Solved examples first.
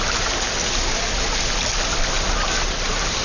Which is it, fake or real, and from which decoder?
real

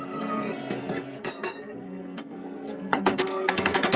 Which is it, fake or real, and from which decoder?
fake, codec, SNAC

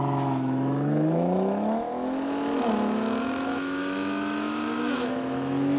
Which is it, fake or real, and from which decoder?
fake, autoencoder, DAC-VAE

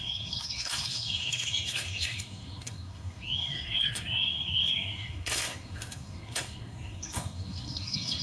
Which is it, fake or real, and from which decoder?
fake, codec, SNAC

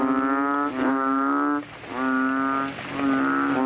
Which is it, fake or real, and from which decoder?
real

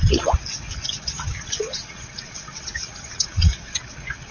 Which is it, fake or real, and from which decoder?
fake, vocoder, WaveNeXt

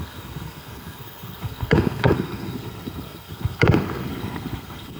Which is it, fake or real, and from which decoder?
fake, codec, SNAC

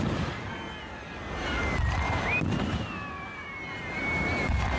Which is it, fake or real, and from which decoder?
real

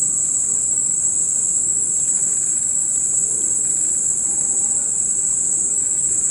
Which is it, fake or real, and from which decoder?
real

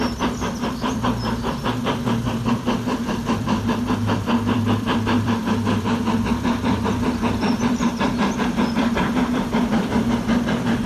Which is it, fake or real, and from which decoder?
fake, vocoder, BigVGAN v2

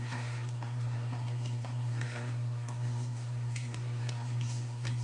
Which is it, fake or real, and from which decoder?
fake, codec, SNAC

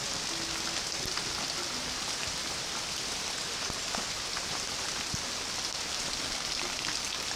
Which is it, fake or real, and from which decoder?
real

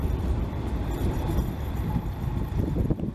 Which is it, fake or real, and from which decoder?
fake, vocoder, BigVGAN v2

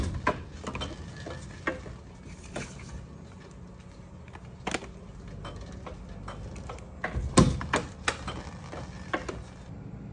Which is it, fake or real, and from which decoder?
real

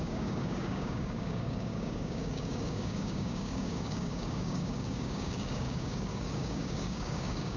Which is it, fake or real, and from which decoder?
fake, codec, DAC